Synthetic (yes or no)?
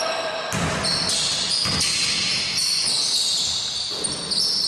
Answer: no